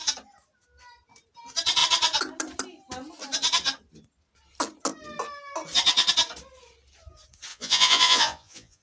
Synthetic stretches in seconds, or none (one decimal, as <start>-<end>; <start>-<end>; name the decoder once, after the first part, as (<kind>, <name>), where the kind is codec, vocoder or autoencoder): 7.5-8.8 (vocoder, Vocos)